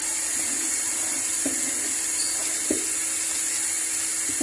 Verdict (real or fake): real